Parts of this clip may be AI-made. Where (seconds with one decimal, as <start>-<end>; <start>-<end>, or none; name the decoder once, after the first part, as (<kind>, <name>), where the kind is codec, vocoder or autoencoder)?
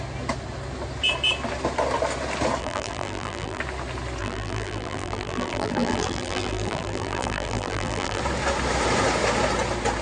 2.6-3.6 (vocoder, BigVGAN v2); 4.2-8.2